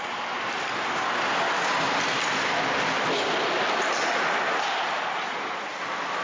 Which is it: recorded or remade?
recorded